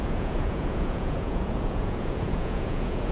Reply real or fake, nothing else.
fake